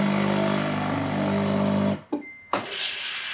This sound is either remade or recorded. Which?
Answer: recorded